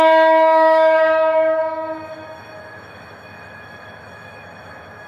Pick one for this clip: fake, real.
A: fake